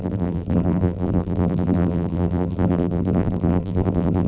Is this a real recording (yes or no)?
no